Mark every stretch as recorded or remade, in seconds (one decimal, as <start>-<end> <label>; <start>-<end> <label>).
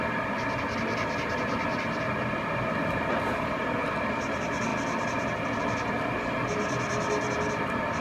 0.0-8.0 recorded